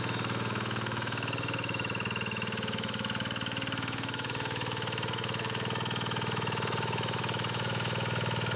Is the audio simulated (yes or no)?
yes